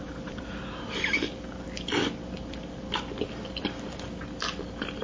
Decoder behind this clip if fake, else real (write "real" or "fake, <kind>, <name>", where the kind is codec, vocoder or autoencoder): fake, vocoder, BigVGAN v2